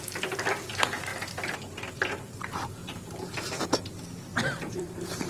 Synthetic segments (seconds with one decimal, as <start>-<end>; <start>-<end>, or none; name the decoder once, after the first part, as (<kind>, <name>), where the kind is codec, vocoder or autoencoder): 2.8-3.5 (vocoder, BigVGAN v2); 4.3-5.3